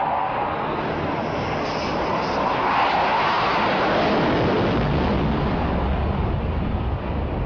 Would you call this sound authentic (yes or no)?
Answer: yes